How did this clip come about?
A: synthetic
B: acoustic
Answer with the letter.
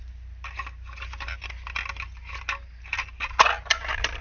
B